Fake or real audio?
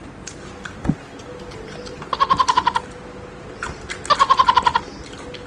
real